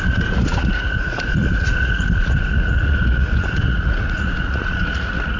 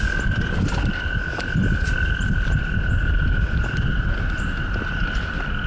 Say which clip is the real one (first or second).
second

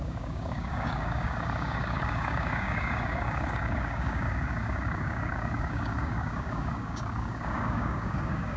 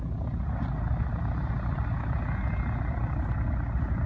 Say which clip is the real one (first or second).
second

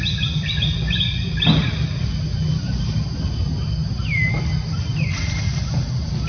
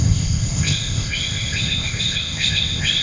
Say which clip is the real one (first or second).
first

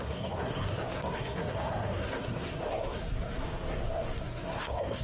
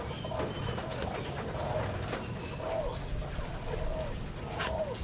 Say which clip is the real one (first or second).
second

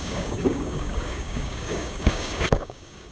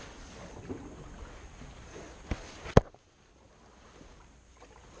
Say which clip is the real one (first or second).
second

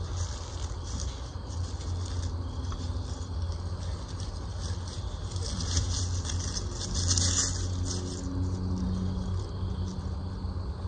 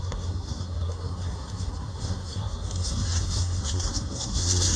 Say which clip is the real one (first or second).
first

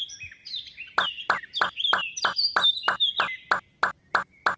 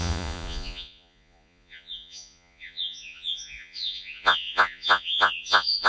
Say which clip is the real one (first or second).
first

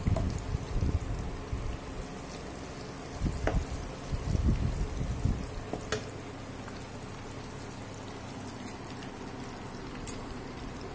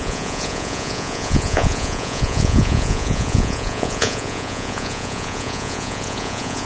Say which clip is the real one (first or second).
first